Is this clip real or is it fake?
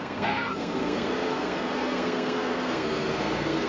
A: fake